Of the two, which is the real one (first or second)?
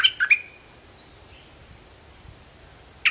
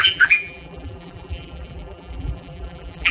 first